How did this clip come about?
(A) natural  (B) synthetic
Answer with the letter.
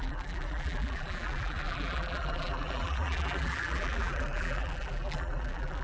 B